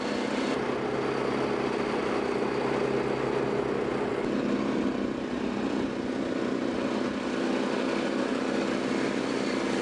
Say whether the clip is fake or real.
real